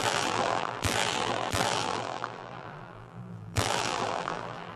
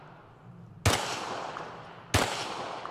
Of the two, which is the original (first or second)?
second